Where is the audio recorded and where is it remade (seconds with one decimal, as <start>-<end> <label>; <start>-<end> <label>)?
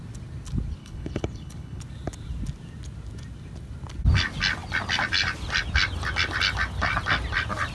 0.0-0.8 recorded; 0.8-1.8 remade; 1.8-7.7 recorded